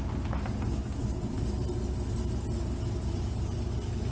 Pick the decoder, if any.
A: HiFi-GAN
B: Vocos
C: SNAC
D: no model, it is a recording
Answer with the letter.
D